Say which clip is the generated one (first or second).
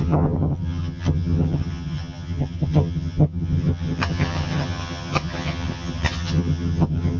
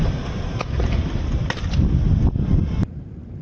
first